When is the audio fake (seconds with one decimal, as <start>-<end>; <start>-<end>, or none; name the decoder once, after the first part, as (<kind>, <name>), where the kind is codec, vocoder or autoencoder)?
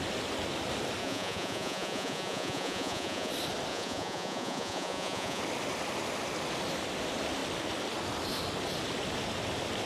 1.0-3.3 (vocoder, Vocos); 3.7-5.4